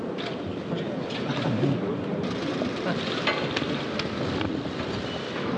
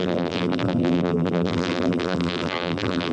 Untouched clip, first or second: first